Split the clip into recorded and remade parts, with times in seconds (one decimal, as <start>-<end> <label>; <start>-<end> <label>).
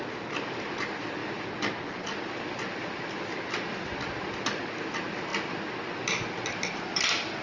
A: 0.0-7.4 recorded